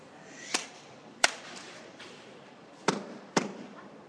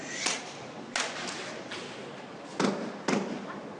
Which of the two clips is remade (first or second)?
first